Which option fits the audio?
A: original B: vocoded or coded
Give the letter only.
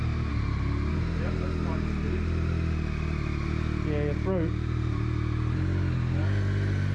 A